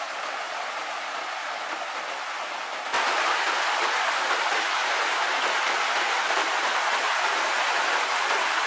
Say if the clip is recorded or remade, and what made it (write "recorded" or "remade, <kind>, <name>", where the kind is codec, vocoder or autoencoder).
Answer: remade, vocoder, BigVGAN v2